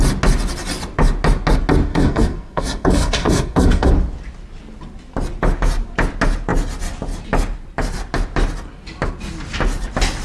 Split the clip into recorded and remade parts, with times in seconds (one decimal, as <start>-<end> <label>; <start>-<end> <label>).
0.0-1.9 recorded; 1.9-3.9 remade; 3.9-10.2 recorded